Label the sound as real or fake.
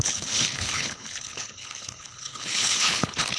fake